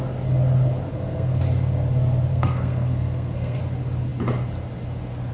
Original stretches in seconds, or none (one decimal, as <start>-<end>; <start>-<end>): 0.0-0.9; 1.4-2.3; 3.6-5.3